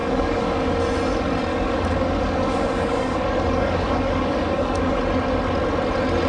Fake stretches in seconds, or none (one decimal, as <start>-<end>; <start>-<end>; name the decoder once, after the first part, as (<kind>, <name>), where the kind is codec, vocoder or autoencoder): 0.0-0.8 (codec, DAC); 1.5-5.0